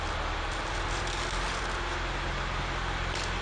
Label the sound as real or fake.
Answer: real